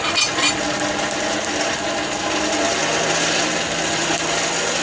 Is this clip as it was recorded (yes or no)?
yes